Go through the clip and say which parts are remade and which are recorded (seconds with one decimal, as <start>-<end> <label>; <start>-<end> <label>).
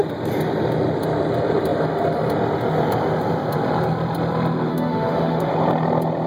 0.0-4.7 recorded; 4.7-5.5 remade; 5.5-6.3 recorded